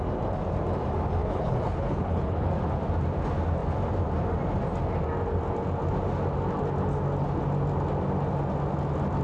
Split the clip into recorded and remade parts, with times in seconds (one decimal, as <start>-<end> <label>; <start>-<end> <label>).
0.0-1.2 recorded; 1.2-2.5 remade; 2.5-9.2 recorded